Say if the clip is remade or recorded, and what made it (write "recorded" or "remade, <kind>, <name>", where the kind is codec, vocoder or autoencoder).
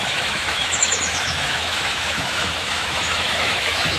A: remade, autoencoder, DAC-VAE